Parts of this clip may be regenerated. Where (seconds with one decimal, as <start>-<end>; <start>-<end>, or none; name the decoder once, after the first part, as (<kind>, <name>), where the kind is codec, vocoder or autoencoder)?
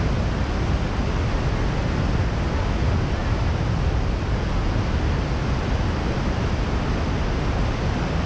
none